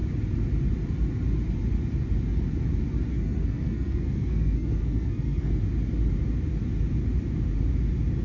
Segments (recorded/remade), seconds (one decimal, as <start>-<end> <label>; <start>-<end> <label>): 0.0-3.1 recorded; 3.1-5.5 remade; 5.5-8.2 recorded